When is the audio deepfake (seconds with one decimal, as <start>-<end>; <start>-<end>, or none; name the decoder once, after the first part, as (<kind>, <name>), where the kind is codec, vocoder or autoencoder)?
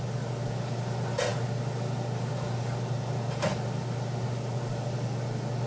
none